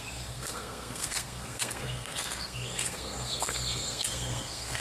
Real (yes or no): no